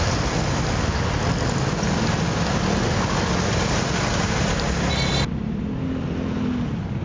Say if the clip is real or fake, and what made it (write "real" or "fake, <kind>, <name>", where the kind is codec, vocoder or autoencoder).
real